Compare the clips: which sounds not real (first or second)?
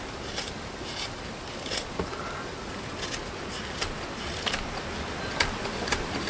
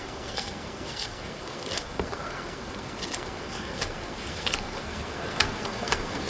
second